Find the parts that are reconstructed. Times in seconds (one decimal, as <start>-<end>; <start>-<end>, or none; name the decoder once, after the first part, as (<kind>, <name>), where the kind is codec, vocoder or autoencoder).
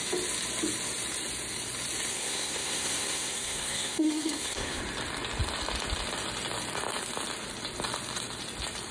2.1-4.8 (codec, SNAC)